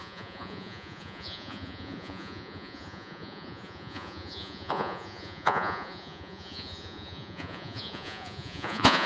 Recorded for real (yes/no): no